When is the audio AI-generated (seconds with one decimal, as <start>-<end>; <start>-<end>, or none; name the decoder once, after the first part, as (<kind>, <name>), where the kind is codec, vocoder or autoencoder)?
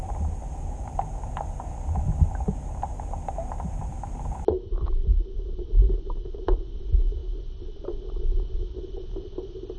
none